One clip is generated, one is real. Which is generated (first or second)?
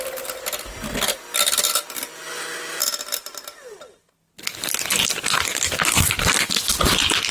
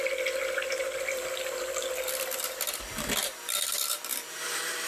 second